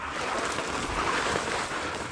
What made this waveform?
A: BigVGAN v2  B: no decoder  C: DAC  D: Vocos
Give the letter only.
B